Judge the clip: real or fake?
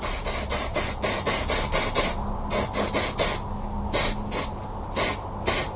real